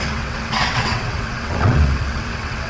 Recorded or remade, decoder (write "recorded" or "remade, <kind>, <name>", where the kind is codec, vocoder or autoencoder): remade, vocoder, WaveNeXt